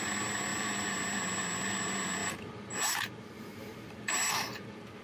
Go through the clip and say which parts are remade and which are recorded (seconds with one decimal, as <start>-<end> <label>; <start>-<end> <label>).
0.0-5.0 recorded